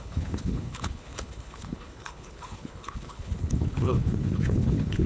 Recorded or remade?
remade